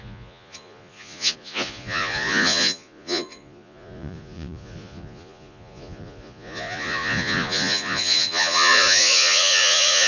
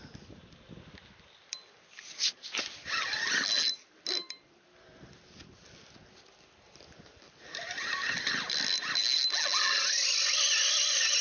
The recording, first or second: second